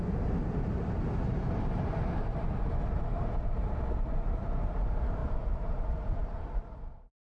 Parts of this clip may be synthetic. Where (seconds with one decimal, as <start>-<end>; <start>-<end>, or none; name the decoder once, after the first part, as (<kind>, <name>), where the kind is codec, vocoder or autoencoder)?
0.0-7.3 (vocoder, BigVGAN v2)